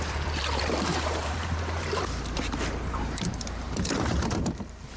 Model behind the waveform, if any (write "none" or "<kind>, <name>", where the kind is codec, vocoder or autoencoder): vocoder, BigVGAN v2